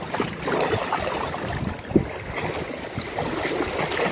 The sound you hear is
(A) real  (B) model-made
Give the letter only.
A